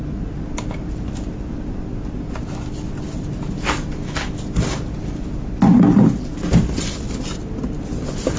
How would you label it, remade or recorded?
recorded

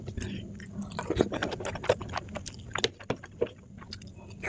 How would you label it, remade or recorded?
recorded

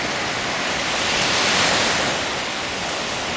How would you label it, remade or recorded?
recorded